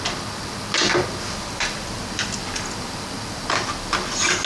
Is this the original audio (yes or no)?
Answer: yes